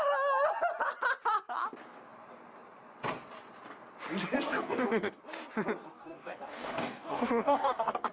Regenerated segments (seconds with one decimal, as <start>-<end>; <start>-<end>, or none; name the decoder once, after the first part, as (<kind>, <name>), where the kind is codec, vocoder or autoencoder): 4.5-5.2 (codec, DAC); 5.9-8.1

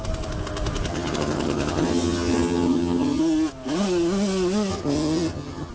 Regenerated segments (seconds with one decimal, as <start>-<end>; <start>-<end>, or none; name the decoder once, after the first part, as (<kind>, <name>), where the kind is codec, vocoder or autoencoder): 0.9-3.2 (vocoder, HiFi-GAN); 4.7-5.7

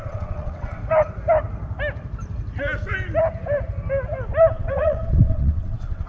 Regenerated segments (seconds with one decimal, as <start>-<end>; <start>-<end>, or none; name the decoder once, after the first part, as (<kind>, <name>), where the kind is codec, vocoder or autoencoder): 0.0-0.8 (vocoder, WaveNeXt); 4.5-6.1

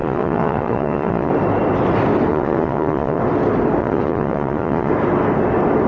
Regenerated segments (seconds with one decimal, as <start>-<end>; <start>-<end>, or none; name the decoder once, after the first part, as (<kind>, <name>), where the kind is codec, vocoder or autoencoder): 0.0-1.3 (vocoder, Vocos); 2.3-3.2; 3.8-4.9

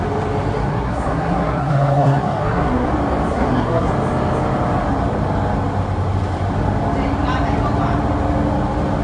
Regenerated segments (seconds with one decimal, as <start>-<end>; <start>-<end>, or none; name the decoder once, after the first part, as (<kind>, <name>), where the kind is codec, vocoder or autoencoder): 0.7-2.9 (codec, SNAC); 3.3-3.9

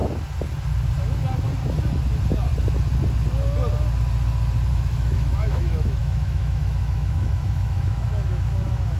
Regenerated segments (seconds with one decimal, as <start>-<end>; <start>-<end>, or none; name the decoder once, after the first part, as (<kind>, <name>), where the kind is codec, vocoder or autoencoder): 4.7-9.0 (autoencoder, DAC-VAE)

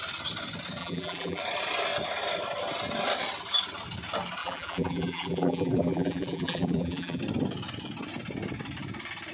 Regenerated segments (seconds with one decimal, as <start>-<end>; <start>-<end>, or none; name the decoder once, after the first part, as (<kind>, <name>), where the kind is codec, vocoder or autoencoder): 0.8-1.4 (vocoder, BigVGAN v2); 4.4-7.2